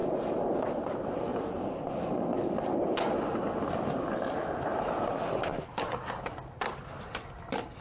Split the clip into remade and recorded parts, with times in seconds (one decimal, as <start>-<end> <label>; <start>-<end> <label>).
0.0-0.9 remade; 0.9-1.3 recorded; 1.3-1.9 remade; 1.9-5.5 recorded; 5.5-6.1 remade; 6.1-7.8 recorded